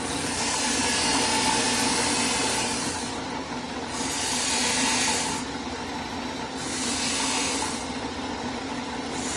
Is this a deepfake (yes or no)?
no